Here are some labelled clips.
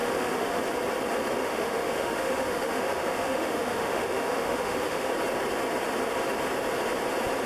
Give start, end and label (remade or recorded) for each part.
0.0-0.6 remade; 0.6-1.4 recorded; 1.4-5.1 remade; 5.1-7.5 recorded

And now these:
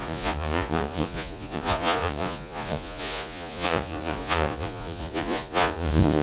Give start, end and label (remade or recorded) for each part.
0.0-6.2 remade

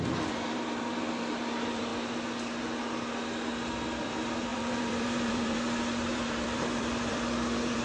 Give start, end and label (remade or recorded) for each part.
0.0-1.9 remade; 1.9-4.0 recorded; 4.0-7.8 remade

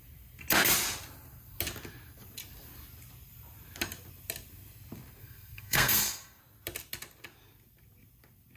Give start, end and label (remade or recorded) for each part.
0.0-5.2 recorded; 5.2-6.4 remade; 6.4-8.6 recorded

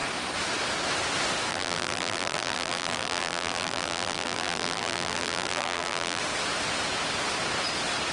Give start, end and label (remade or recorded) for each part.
0.0-1.5 recorded; 1.5-6.2 remade; 6.2-8.1 recorded

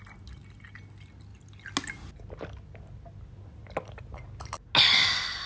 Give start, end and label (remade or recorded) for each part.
0.0-5.5 recorded

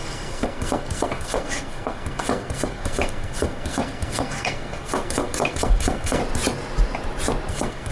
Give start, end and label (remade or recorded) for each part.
0.0-6.2 remade; 6.2-7.5 recorded; 7.5-7.9 remade

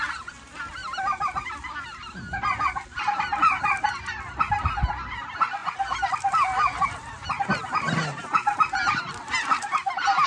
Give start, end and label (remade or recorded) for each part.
0.0-10.3 recorded